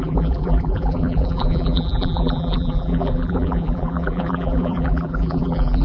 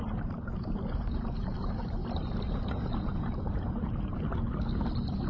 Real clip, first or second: second